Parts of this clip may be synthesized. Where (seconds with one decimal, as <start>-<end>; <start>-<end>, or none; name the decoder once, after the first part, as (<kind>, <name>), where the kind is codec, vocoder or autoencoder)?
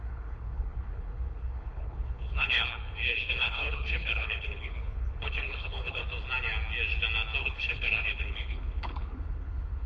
0.0-6.0 (codec, HILCodec); 7.4-9.9